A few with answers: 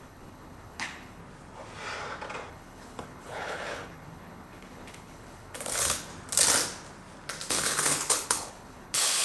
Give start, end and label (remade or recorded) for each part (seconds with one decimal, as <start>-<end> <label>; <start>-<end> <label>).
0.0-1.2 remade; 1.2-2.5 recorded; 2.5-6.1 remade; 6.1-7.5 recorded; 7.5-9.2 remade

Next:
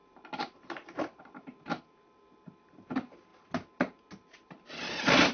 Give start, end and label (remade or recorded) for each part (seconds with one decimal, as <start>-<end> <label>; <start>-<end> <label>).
0.0-5.3 recorded

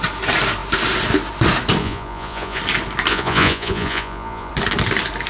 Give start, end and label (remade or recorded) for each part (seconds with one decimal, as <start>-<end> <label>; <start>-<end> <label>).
0.0-1.8 recorded; 1.8-2.6 remade; 2.6-3.1 recorded; 3.1-4.5 remade; 4.5-5.3 recorded

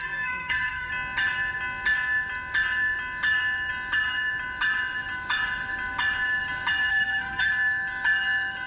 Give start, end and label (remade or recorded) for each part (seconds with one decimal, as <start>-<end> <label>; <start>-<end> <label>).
0.0-0.9 remade; 0.9-6.9 recorded; 6.9-7.5 remade; 7.5-8.7 recorded

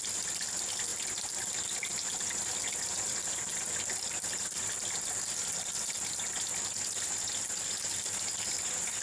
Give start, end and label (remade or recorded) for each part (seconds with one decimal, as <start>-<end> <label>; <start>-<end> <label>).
0.0-9.0 recorded